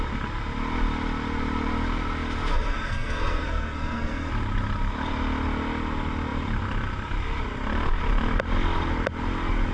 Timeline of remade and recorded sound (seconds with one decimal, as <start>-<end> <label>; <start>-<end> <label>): 0.0-2.5 recorded; 2.5-4.3 remade; 4.3-9.7 recorded